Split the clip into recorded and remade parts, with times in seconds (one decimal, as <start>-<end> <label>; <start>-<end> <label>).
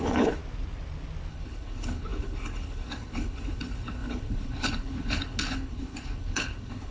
0.0-0.4 remade; 0.4-1.3 recorded; 1.3-6.9 remade